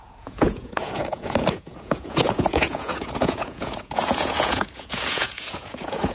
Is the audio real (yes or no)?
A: no